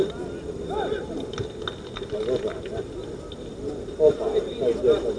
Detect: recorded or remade recorded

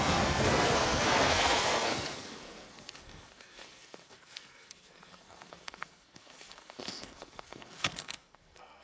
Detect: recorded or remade remade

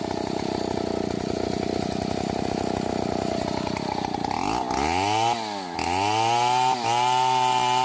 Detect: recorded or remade recorded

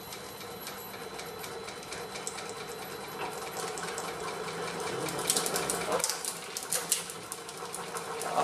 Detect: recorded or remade recorded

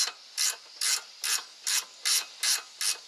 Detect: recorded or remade recorded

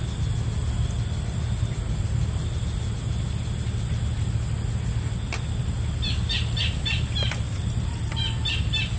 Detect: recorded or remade recorded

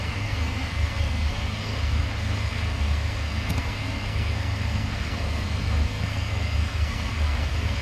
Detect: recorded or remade remade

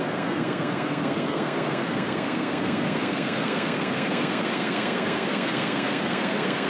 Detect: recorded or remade remade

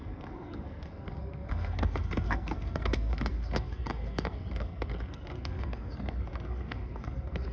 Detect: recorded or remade remade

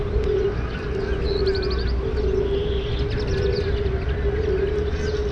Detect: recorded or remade recorded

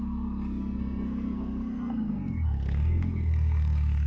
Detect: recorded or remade remade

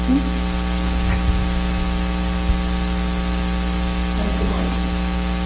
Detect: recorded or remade recorded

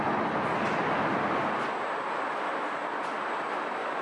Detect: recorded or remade recorded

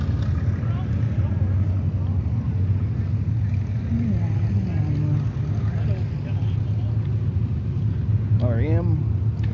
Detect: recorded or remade recorded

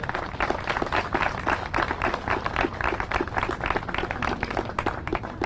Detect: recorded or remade recorded